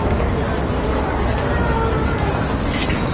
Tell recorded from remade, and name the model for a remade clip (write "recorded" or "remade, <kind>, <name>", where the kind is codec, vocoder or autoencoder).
recorded